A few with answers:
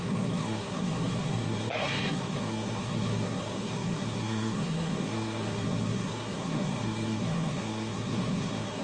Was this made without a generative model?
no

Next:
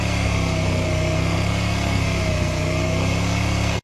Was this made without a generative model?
no